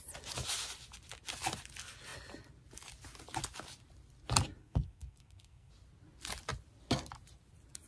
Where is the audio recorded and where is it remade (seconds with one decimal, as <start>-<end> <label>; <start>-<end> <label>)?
0.0-4.6 recorded; 4.6-5.7 remade; 5.7-7.9 recorded